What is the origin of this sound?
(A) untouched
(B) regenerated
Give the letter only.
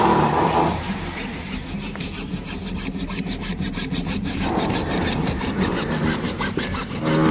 B